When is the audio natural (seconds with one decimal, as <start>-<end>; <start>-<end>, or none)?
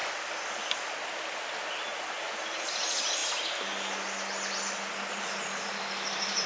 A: 0.0-6.5